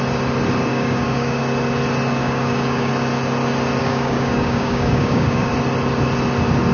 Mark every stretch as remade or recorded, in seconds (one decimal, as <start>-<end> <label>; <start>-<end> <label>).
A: 0.0-0.7 recorded; 0.7-1.4 remade; 1.4-2.2 recorded; 2.2-2.9 remade; 2.9-3.8 recorded; 3.8-5.5 remade; 5.5-6.7 recorded